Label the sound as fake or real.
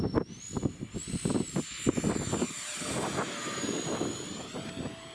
real